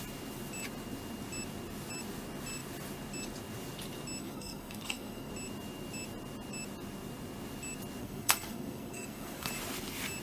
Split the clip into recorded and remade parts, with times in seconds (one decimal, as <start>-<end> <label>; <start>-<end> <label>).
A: 0.0-4.2 recorded; 4.2-5.3 remade; 5.3-8.0 recorded; 8.0-9.5 remade; 9.5-10.2 recorded